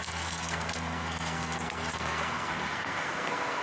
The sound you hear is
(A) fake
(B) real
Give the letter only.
A